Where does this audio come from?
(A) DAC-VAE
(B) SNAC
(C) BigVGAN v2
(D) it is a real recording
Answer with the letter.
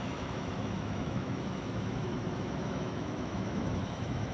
A